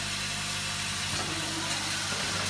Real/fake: real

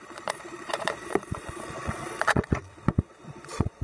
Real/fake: fake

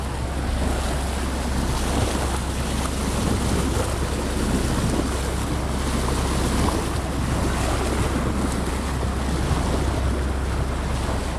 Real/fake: real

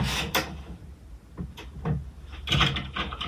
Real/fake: real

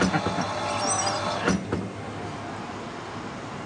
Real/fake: real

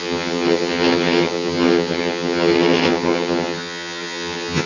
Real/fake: fake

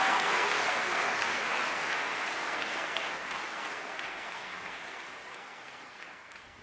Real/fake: fake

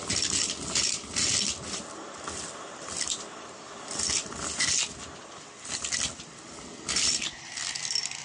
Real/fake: real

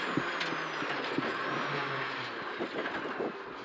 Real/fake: real